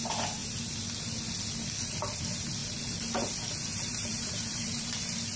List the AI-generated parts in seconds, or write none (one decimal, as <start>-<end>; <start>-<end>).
3.7-5.0